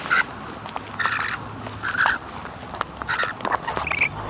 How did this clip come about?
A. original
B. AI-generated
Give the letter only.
A